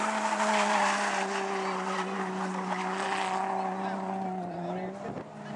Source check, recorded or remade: recorded